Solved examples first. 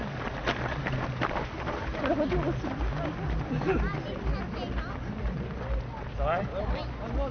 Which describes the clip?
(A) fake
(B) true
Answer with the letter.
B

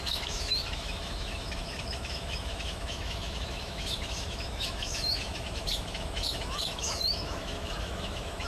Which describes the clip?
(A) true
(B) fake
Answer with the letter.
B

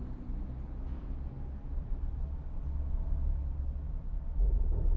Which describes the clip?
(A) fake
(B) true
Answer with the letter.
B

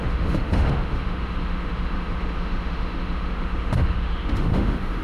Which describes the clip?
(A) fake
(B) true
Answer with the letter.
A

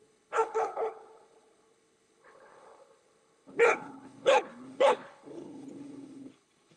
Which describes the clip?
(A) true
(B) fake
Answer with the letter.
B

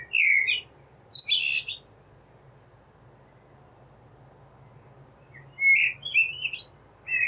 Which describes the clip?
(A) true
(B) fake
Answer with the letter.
A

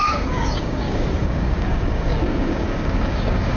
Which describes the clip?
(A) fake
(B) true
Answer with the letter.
A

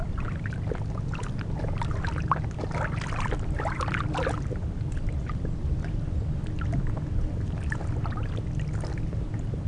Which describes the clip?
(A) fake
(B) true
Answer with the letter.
B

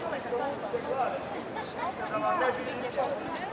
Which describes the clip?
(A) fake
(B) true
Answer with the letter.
B